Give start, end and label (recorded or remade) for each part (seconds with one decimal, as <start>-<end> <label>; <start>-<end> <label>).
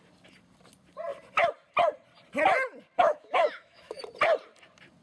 0.0-3.0 recorded; 3.0-4.0 remade; 4.0-5.0 recorded